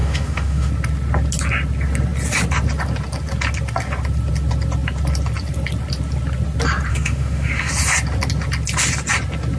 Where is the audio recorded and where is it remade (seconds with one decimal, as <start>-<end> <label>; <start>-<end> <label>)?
0.0-0.7 remade; 0.7-6.9 recorded; 6.9-7.7 remade; 7.7-9.6 recorded